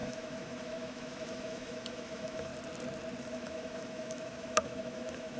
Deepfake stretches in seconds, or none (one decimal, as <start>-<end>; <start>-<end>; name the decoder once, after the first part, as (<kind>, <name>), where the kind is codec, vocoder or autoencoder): 0.0-2.5 (autoencoder, DAC-VAE); 3.2-5.4